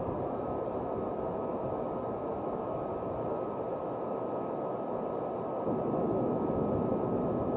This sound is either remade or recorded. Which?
recorded